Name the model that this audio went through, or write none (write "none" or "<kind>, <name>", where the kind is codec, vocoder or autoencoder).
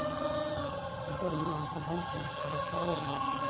vocoder, HiFi-GAN